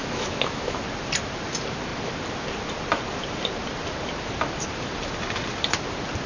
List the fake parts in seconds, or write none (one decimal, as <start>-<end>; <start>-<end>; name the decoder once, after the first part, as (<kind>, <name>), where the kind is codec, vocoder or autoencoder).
0.0-0.8 (autoencoder, DAC-VAE)

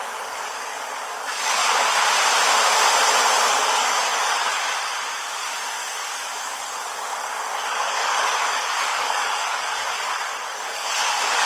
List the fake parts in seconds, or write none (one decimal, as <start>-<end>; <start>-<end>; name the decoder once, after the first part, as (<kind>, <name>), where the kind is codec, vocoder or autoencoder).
0.0-1.6 (codec, DAC); 3.5-11.5

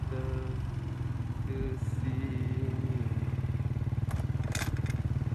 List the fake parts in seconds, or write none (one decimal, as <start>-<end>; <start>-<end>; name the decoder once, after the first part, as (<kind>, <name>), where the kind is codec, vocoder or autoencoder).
none